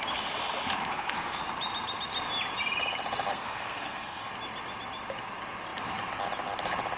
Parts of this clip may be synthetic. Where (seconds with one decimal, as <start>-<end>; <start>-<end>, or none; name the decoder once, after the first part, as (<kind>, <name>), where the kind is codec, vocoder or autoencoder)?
0.9-1.4 (codec, SNAC); 3.3-4.3